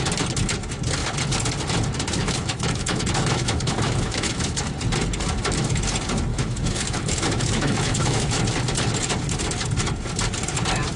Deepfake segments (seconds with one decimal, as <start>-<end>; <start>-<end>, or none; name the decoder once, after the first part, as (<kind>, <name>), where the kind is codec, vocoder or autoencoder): 2.2-4.6 (autoencoder, DAC-VAE); 6.3-8.4